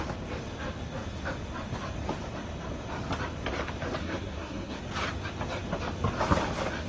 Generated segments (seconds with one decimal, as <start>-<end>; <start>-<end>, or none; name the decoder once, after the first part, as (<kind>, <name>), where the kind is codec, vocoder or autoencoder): 4.0-4.8 (codec, SNAC)